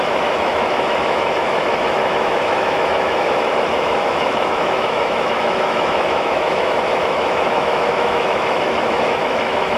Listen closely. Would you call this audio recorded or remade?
remade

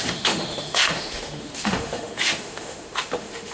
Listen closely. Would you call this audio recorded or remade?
remade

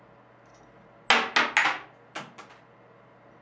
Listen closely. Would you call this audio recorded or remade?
recorded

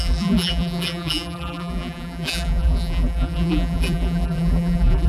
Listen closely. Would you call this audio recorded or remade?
remade